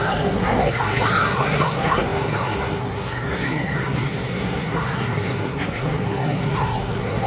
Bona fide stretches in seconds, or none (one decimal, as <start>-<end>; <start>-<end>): none